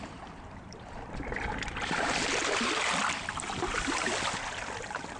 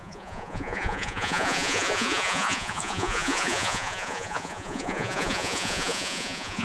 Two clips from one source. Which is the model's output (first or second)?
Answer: second